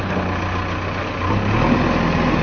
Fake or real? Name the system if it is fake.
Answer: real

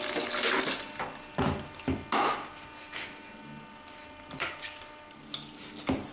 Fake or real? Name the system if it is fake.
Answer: real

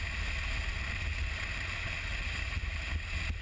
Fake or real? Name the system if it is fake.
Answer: real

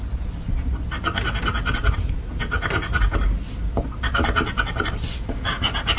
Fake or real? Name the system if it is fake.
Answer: real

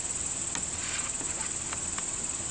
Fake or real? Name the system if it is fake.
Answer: real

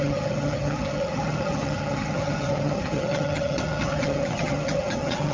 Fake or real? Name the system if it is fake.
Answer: fake, vocoder, HiFi-GAN